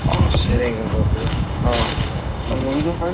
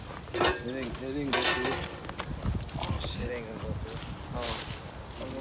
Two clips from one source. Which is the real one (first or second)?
second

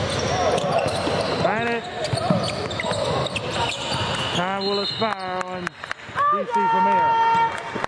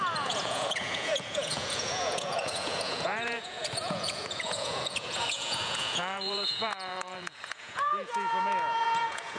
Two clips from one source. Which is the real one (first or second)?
first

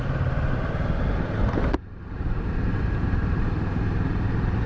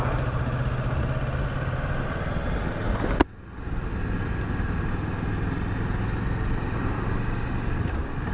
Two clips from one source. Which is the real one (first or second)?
second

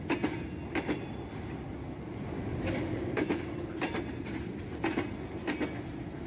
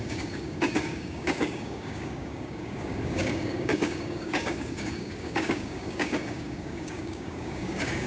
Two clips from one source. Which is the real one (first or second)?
first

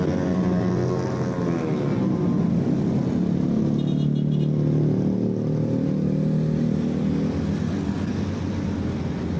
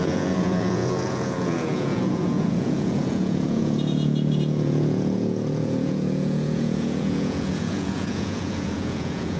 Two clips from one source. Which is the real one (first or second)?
first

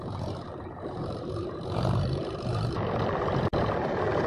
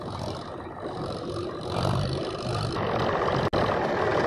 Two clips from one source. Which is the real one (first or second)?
second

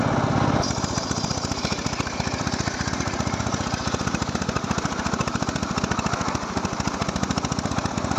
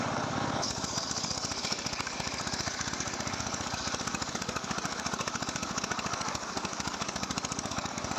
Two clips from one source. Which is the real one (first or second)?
first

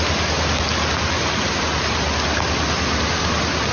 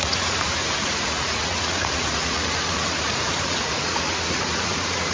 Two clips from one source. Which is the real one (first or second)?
first